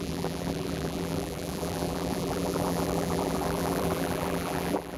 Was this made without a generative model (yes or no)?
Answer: no